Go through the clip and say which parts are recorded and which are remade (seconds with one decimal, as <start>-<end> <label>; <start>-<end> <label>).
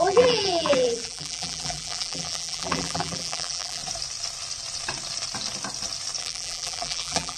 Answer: 0.0-3.8 remade; 3.8-6.2 recorded; 6.2-7.4 remade